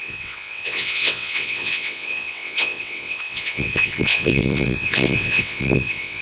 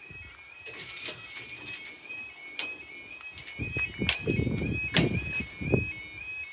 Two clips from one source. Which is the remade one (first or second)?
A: first